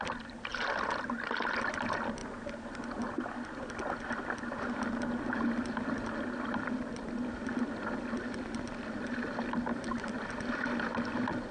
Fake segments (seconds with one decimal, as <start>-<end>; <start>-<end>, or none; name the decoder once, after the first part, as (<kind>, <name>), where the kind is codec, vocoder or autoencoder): none